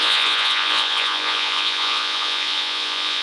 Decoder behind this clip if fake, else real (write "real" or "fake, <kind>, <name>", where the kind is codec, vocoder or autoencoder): fake, vocoder, Vocos